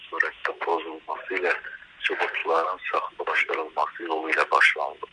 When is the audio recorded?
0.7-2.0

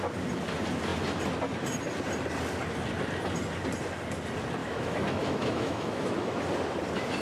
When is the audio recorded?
0.0-4.6; 6.4-7.2

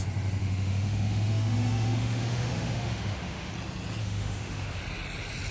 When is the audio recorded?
0.0-0.4; 3.5-4.0; 4.8-5.5

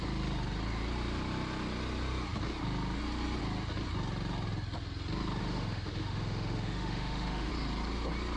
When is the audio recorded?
0.0-5.4; 7.5-8.4

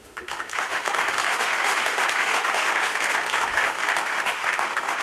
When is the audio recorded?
none